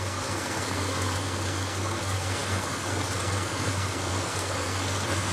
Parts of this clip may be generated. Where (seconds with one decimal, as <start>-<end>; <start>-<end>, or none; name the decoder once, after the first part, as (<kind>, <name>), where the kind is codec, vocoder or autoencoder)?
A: 0.0-5.3 (codec, SNAC)